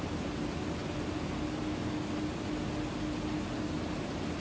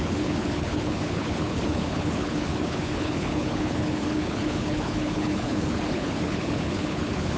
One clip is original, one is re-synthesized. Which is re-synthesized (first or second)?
second